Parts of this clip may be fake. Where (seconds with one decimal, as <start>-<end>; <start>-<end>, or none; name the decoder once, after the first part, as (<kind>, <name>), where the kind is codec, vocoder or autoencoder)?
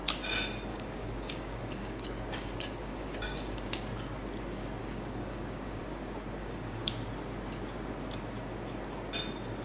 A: 0.7-3.7 (codec, DAC); 4.8-5.8; 6.4-6.9